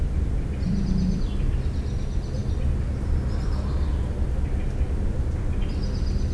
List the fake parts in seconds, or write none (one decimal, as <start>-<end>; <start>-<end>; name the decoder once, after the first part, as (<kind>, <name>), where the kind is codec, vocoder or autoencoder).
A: none